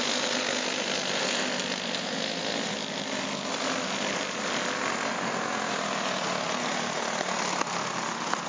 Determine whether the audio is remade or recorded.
recorded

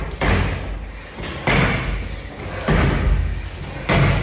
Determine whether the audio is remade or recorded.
recorded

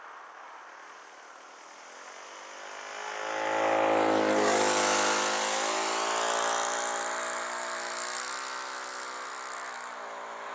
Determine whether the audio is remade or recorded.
recorded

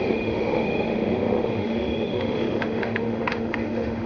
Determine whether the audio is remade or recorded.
remade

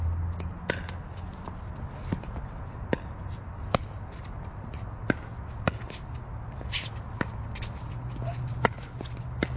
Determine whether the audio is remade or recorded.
recorded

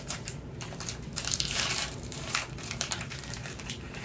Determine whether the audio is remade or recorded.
remade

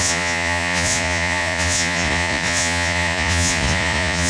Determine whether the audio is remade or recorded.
remade